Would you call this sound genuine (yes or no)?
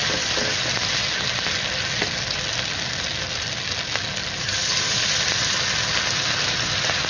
yes